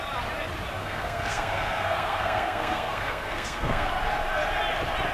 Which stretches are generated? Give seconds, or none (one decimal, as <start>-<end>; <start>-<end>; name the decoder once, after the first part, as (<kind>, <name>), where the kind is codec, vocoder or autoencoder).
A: 0.8-3.9 (codec, SNAC)